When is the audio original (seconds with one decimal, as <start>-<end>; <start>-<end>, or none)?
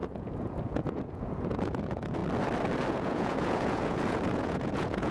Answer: 2.2-2.9